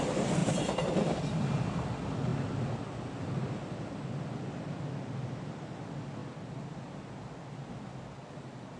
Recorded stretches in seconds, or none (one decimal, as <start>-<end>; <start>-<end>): 0.0-0.4; 1.2-8.8